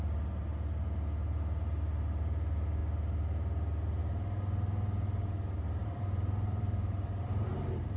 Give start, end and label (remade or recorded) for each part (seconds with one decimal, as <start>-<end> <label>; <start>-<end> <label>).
0.0-5.8 recorded; 5.8-7.5 remade; 7.5-8.0 recorded